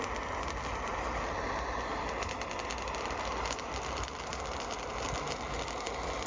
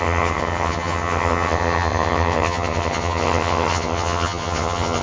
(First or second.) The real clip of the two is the first